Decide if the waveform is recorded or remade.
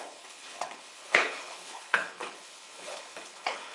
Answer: remade